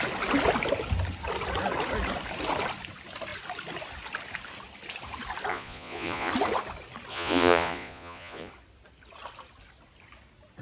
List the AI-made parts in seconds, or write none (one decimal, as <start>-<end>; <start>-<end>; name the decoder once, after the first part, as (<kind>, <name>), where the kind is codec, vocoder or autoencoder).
5.5-6.3 (vocoder, Vocos); 7.1-8.5